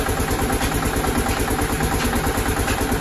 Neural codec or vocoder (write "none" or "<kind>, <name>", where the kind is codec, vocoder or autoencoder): none